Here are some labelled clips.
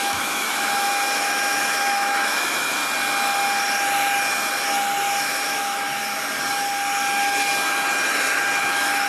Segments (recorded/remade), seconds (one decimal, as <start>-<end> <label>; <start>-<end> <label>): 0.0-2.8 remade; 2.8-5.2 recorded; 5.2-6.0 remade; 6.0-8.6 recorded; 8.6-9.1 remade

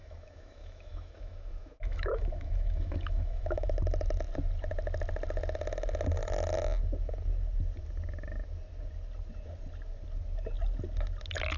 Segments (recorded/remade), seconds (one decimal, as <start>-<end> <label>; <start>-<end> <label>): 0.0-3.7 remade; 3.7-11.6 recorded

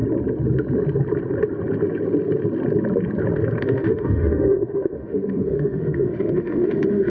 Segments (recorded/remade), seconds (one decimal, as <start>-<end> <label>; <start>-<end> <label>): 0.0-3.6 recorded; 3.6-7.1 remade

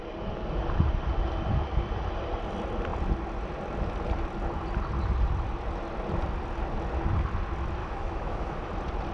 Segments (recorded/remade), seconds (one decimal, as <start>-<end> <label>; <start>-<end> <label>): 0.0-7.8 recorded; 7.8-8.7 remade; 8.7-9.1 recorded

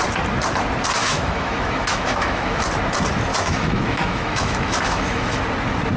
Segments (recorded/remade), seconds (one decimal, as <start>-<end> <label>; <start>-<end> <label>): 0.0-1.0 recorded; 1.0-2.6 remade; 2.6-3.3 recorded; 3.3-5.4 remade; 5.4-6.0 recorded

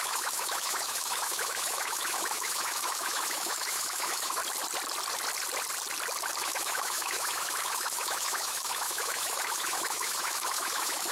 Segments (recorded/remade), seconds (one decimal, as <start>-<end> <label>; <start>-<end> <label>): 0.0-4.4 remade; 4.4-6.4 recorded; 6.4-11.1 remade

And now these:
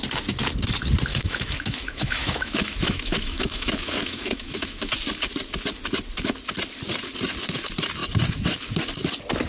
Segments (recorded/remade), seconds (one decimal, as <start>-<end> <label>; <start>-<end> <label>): 0.0-1.1 recorded; 1.1-4.9 remade; 4.9-9.5 recorded

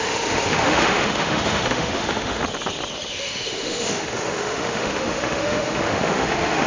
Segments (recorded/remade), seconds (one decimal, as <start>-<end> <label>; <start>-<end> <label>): 0.0-2.4 remade; 2.4-3.1 recorded; 3.1-6.7 remade